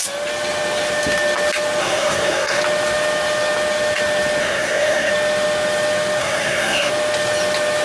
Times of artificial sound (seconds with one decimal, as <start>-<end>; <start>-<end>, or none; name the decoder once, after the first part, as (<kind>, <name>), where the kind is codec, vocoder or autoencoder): 1.8-2.6 (codec, SNAC); 4.4-5.1; 6.2-6.9